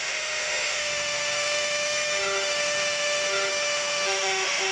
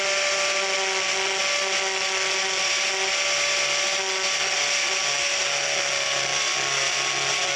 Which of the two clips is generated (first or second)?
first